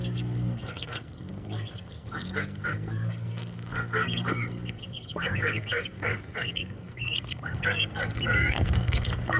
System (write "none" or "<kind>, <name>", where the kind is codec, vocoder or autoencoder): codec, SNAC